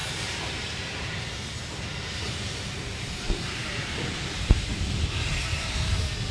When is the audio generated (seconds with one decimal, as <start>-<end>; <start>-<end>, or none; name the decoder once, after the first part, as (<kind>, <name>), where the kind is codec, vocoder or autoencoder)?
0.0-6.3 (vocoder, BigVGAN v2)